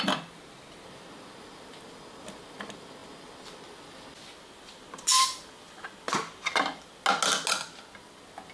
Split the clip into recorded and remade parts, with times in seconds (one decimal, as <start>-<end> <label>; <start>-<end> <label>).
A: 0.0-8.5 recorded

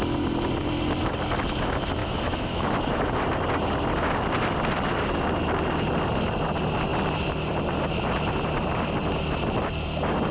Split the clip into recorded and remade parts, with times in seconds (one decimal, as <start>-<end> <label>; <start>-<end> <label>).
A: 0.0-2.0 recorded; 2.0-3.1 remade; 3.1-10.3 recorded

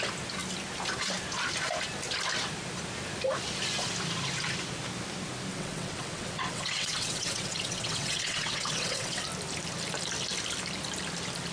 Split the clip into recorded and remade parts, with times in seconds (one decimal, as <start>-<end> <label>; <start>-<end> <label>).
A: 0.0-5.5 recorded; 5.5-9.2 remade; 9.2-11.5 recorded

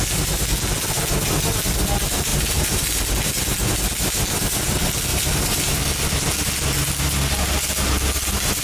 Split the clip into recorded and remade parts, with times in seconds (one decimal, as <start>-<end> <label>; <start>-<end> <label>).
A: 0.0-2.3 recorded; 2.3-3.0 remade; 3.0-5.1 recorded; 5.1-5.8 remade; 5.8-8.6 recorded

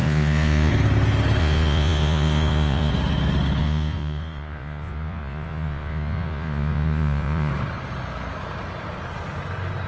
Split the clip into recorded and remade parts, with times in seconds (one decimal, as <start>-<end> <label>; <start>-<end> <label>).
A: 0.0-0.7 remade; 0.7-1.4 recorded; 1.4-2.9 remade; 2.9-3.6 recorded; 3.6-7.5 remade; 7.5-9.9 recorded

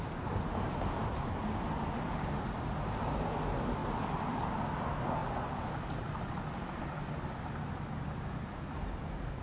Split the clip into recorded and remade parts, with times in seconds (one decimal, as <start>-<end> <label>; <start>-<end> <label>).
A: 0.0-9.4 recorded

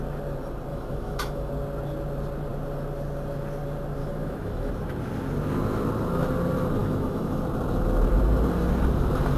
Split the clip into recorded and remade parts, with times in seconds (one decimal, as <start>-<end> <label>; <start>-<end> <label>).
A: 0.0-0.7 recorded; 0.7-1.5 remade; 1.5-4.0 recorded; 4.0-4.7 remade; 4.7-6.8 recorded; 6.8-7.4 remade; 7.4-9.4 recorded